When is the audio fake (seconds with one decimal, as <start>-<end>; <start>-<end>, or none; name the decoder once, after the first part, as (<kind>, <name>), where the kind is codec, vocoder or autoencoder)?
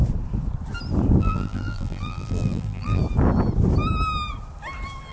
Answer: 1.2-3.0 (vocoder, BigVGAN v2)